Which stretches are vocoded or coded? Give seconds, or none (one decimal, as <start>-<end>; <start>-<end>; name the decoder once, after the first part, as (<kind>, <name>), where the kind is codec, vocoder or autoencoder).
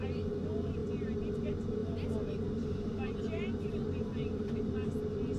none